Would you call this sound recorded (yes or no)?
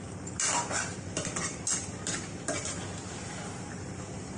yes